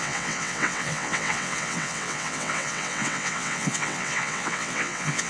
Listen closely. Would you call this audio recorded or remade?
remade